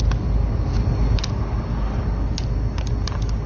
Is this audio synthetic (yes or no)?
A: no